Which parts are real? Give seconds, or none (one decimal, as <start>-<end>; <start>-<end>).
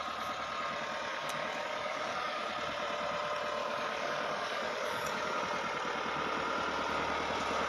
0.0-1.1; 2.5-3.6; 5.4-7.7